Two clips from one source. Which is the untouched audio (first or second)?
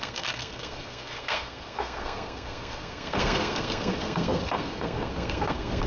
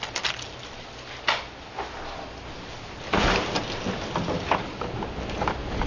second